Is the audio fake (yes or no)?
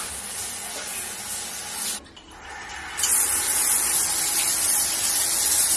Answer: no